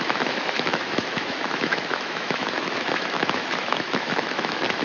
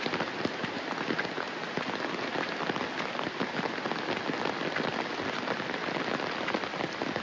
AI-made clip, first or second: first